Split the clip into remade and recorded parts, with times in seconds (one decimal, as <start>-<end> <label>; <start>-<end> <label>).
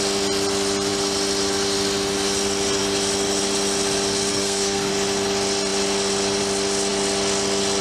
0.0-4.3 recorded; 4.3-4.9 remade; 4.9-7.8 recorded